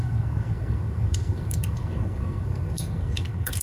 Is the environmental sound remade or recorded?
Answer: remade